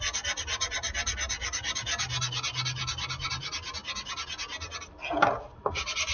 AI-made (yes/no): no